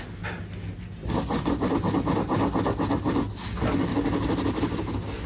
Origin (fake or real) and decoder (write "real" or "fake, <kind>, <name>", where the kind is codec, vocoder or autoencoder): real